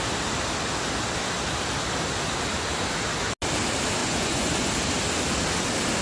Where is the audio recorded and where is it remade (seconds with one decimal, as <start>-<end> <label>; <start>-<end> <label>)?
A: 0.0-4.0 recorded; 4.0-4.7 remade; 4.7-6.0 recorded